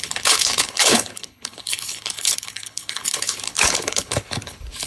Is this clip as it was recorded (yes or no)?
no